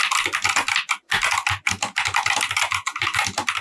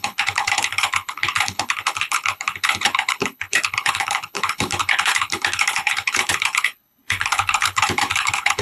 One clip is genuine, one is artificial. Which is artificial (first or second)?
second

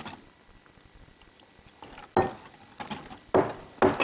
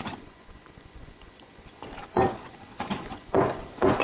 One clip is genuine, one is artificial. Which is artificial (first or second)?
second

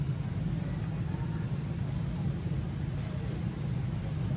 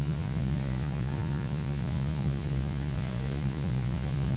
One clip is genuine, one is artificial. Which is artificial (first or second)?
second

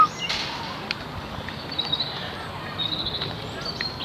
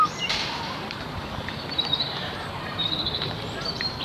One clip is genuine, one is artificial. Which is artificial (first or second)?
second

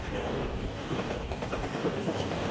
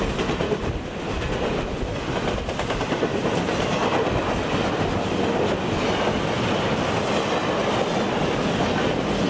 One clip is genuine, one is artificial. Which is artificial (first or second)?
first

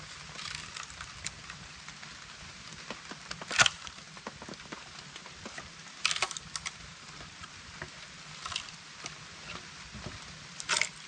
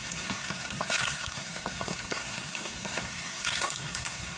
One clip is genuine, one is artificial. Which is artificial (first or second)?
second